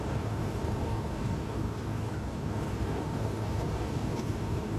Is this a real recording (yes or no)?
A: no